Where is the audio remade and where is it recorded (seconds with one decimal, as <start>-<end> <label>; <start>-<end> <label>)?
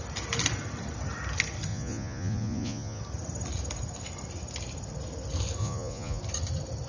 0.0-1.7 recorded; 1.7-3.0 remade; 3.0-5.6 recorded; 5.6-6.2 remade; 6.2-6.9 recorded